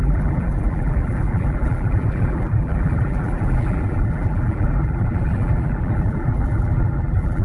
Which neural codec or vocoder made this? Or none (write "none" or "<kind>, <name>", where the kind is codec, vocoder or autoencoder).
vocoder, BigVGAN v2